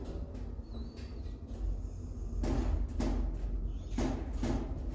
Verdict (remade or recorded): recorded